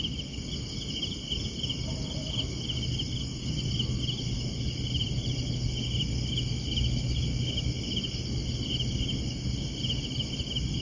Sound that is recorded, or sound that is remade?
recorded